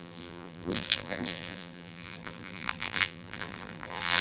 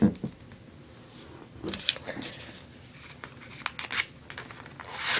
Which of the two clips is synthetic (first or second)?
first